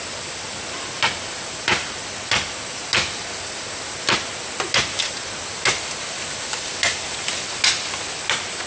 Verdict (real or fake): real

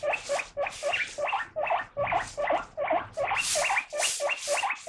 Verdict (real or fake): real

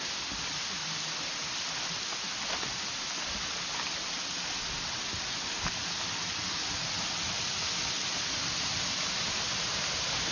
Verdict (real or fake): real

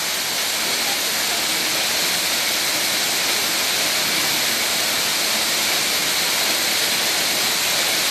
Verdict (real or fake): real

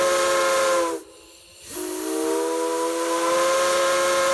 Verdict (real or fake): real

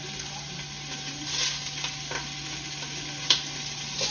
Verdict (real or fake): real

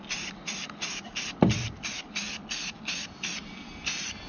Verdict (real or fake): real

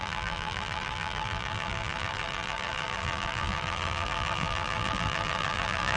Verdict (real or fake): fake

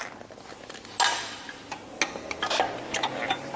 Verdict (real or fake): real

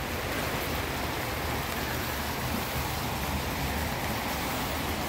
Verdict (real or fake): real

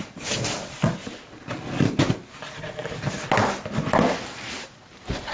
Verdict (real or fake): real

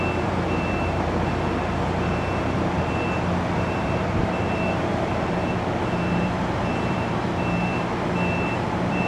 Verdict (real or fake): fake